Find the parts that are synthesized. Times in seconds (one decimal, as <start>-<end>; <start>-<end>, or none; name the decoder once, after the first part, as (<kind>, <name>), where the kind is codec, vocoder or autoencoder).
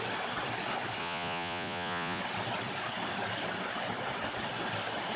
1.0-2.2 (vocoder, Vocos)